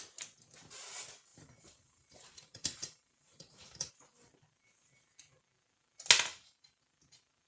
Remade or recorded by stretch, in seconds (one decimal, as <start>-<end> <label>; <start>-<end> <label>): 0.0-1.3 recorded; 1.3-3.9 remade; 3.9-6.3 recorded; 6.3-6.8 remade; 6.8-7.5 recorded